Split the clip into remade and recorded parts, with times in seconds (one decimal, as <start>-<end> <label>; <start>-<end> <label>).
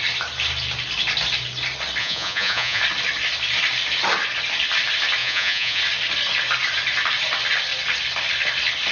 0.0-2.0 recorded; 2.0-2.8 remade; 2.8-5.2 recorded; 5.2-5.8 remade; 5.8-8.9 recorded